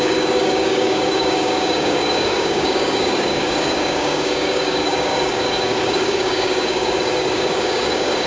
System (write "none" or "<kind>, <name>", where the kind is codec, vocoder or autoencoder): codec, DAC